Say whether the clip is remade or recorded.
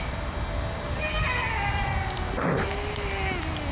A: recorded